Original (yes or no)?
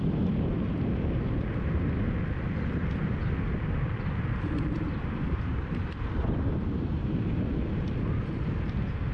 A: no